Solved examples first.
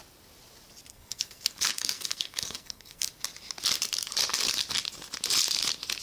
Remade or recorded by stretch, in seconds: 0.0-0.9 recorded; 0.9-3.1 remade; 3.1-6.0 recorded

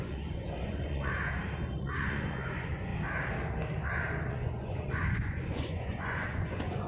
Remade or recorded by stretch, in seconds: 0.0-1.1 remade; 1.1-1.8 recorded; 1.8-2.9 remade; 2.9-4.3 recorded; 4.3-6.9 remade